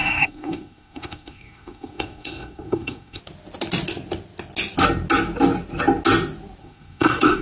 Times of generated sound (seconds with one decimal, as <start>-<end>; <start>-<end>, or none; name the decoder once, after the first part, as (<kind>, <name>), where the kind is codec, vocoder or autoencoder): 0.0-3.2 (codec, SNAC); 6.6-7.4